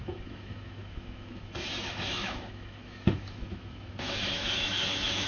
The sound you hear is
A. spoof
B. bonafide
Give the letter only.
A